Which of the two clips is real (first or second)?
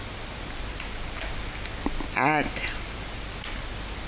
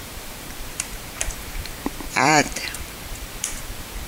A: first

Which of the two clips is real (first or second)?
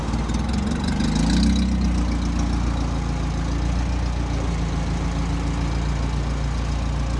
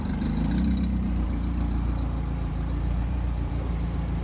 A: first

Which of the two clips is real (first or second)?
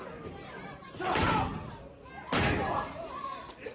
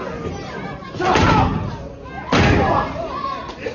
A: second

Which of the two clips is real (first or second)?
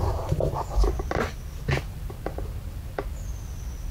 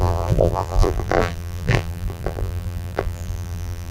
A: first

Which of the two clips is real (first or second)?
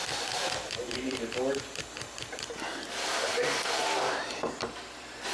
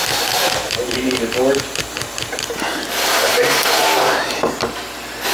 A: second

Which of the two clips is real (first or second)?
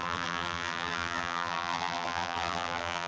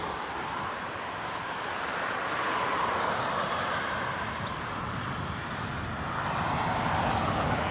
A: second